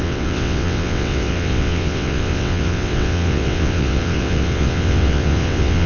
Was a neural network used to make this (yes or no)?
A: yes